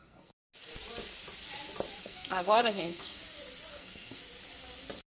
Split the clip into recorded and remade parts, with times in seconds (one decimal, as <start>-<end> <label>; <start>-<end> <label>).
0.0-0.4 remade; 0.4-2.0 recorded; 2.0-3.2 remade; 3.2-3.7 recorded; 3.7-4.2 remade; 4.2-5.1 recorded